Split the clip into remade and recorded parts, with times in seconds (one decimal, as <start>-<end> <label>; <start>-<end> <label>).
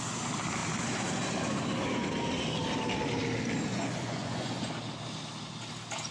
0.0-3.7 recorded; 3.7-4.7 remade; 4.7-6.1 recorded